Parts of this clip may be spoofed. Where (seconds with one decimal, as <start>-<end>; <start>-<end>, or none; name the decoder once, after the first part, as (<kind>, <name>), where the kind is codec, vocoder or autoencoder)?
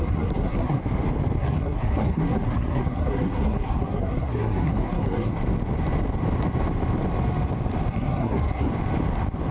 0.0-0.8 (codec, SNAC); 1.4-5.3; 7.9-8.7